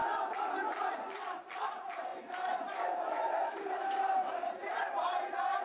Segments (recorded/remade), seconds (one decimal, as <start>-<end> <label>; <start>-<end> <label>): 0.0-2.1 recorded; 2.1-4.5 remade; 4.5-5.6 recorded